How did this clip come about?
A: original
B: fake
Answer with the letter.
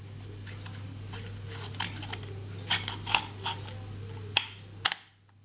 A